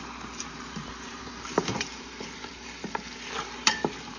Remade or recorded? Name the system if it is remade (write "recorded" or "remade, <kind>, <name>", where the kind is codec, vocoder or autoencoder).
remade, vocoder, BigVGAN v2